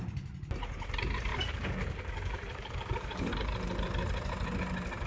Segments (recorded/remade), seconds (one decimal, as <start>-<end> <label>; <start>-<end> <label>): 0.0-1.3 recorded; 1.3-3.3 remade; 3.3-5.1 recorded